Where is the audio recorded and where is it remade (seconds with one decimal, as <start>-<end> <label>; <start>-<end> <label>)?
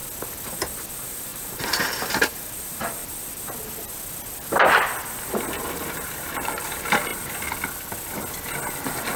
0.0-0.9 recorded; 0.9-3.0 remade; 3.0-5.9 recorded; 5.9-7.1 remade; 7.1-8.7 recorded; 8.7-9.2 remade